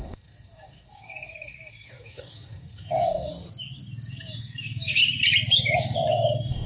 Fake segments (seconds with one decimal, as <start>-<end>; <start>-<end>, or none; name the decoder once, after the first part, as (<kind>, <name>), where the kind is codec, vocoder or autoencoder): 0.0-3.3 (codec, DAC); 4.1-5.0; 6.1-6.7